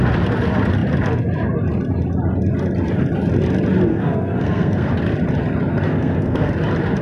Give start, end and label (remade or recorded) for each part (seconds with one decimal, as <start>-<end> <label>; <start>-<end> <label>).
0.0-3.9 recorded; 3.9-4.9 remade; 4.9-5.7 recorded; 5.7-6.5 remade; 6.5-7.0 recorded